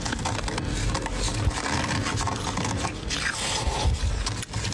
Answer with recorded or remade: recorded